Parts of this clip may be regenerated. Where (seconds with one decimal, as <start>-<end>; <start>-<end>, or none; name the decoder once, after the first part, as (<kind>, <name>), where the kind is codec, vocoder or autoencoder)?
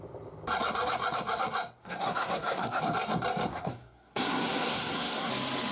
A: 1.8-2.8 (codec, SNAC); 3.5-5.3